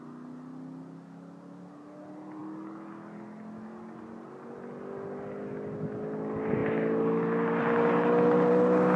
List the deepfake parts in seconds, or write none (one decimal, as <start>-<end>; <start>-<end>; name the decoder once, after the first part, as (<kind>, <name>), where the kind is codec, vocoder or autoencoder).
none